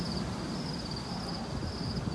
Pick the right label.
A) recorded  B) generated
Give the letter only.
A